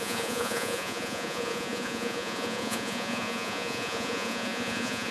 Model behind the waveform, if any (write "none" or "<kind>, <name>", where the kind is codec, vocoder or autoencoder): vocoder, Vocos